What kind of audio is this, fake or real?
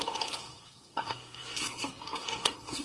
fake